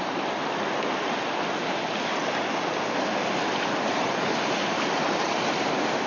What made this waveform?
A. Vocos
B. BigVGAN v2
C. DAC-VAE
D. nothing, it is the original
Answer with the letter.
D